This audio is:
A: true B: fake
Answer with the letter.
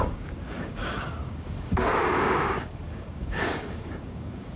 B